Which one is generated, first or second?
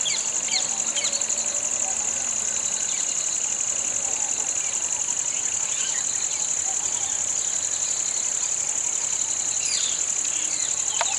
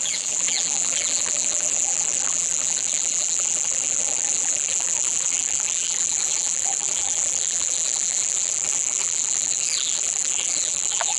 second